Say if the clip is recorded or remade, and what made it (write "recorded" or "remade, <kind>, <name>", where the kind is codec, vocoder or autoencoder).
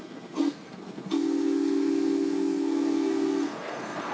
remade, codec, SNAC